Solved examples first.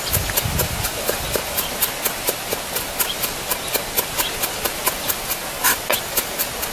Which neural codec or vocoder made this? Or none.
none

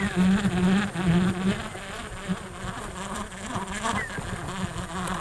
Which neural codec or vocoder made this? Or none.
none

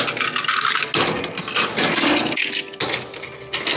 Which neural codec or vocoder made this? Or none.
none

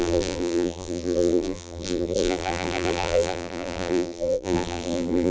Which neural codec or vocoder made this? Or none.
vocoder, BigVGAN v2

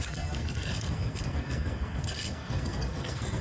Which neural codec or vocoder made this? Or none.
codec, SNAC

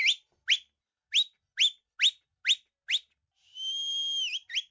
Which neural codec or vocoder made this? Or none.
none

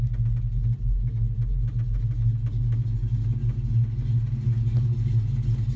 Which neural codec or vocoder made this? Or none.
none